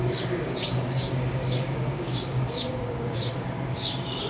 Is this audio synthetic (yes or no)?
yes